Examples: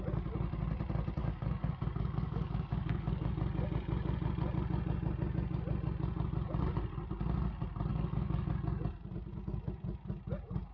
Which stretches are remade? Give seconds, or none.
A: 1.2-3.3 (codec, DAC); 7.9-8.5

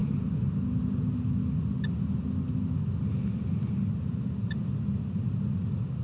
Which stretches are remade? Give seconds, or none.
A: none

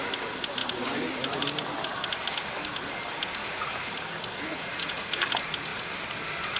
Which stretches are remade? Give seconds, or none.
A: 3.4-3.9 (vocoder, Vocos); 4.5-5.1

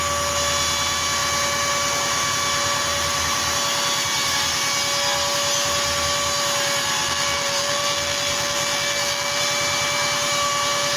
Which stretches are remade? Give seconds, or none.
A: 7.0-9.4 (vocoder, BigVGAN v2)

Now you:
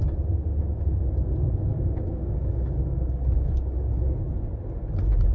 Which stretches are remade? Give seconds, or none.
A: 1.7-3.5 (codec, DAC)

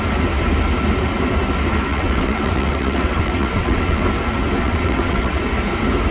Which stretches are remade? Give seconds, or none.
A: 1.9-4.0 (vocoder, WaveNeXt); 4.6-5.4